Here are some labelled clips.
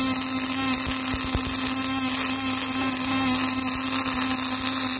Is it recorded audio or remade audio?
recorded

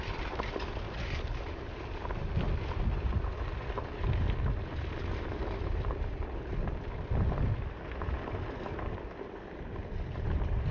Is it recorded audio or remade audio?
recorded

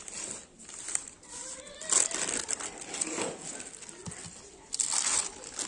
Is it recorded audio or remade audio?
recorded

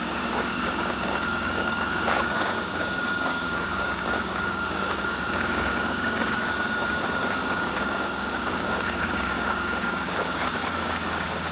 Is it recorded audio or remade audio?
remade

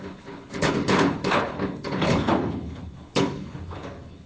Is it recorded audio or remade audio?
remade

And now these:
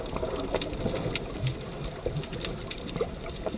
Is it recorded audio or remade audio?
recorded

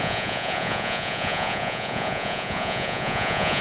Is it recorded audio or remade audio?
remade